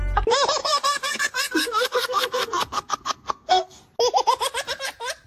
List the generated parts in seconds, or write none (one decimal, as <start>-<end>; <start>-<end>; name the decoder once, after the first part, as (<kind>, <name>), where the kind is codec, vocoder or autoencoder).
0.6-3.8 (codec, SNAC)